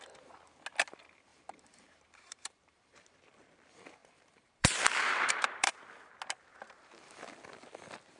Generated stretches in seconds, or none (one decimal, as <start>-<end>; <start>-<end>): 1.3-3.1; 4.0-5.8; 6.5-7.2